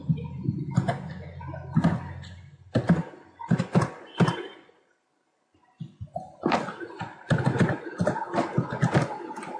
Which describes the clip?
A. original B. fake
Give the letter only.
A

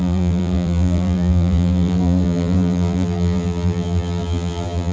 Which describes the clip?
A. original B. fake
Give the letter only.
B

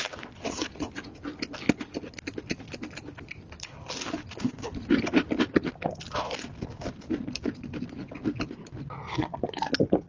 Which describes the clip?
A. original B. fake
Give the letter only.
A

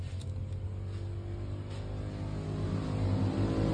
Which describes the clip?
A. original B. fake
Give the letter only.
A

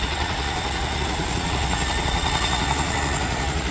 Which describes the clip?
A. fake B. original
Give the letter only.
A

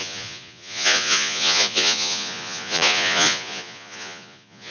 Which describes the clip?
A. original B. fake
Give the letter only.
B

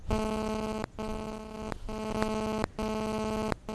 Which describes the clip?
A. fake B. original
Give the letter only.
B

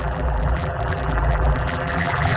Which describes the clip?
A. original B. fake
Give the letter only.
B